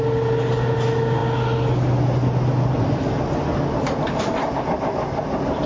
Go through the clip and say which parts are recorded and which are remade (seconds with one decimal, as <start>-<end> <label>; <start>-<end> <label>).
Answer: 0.0-5.7 recorded